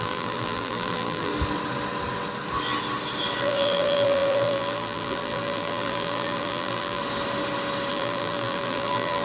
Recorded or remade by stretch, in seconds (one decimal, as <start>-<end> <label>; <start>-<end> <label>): 0.0-1.3 remade; 1.3-3.4 recorded; 3.4-7.0 remade; 7.0-7.9 recorded; 7.9-9.2 remade